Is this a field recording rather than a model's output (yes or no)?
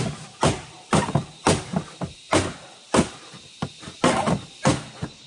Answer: yes